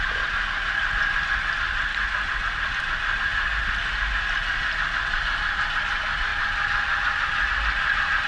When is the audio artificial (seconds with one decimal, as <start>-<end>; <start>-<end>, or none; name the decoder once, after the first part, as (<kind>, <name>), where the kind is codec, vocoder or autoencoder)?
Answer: none